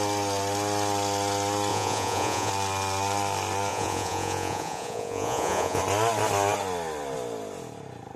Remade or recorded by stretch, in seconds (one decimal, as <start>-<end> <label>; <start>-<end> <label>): 0.0-1.7 recorded; 1.7-2.5 remade; 2.5-3.7 recorded; 3.7-5.8 remade; 5.8-8.2 recorded